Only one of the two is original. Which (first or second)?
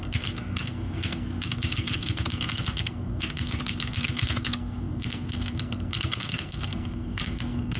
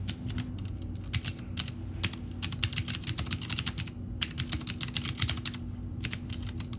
second